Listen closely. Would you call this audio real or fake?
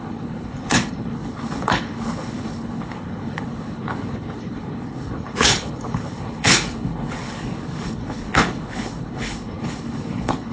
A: fake